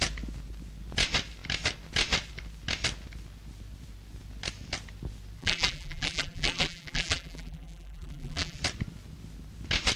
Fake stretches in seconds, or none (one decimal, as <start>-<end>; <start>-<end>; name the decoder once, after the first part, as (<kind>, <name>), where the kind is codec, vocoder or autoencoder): 5.4-8.6 (vocoder, BigVGAN v2)